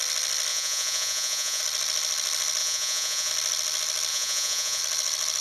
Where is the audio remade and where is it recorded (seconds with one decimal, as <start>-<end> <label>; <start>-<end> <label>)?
0.0-0.5 recorded; 0.5-1.6 remade; 1.6-2.6 recorded; 2.6-3.3 remade; 3.3-4.1 recorded; 4.1-4.8 remade; 4.8-5.4 recorded